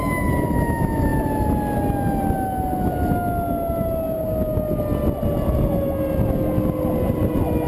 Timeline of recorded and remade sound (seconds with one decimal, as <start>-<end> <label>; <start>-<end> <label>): 0.0-7.7 recorded